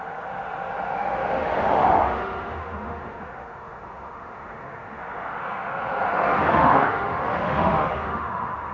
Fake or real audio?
fake